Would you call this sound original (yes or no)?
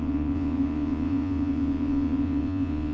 no